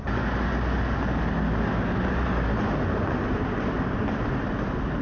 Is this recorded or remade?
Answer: recorded